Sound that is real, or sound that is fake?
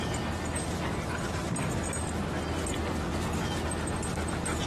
real